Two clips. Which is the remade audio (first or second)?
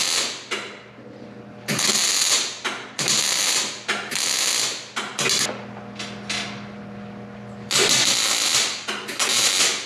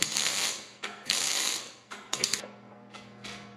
second